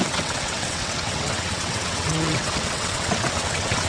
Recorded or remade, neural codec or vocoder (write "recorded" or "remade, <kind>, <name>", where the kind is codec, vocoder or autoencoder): remade, vocoder, WaveNeXt